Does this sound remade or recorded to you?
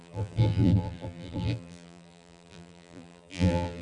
remade